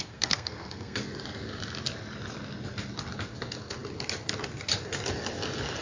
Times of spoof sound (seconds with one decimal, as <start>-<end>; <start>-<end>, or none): 0.0-1.0